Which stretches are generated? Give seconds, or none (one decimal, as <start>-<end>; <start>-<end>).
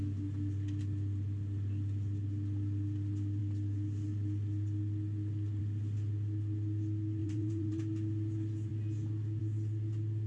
7.2-7.8